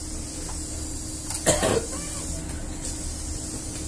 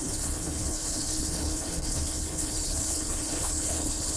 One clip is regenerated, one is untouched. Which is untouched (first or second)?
first